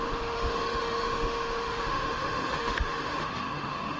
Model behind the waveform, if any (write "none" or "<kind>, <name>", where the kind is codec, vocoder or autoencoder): autoencoder, DAC-VAE